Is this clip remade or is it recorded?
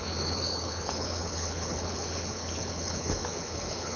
remade